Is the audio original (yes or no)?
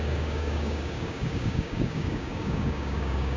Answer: no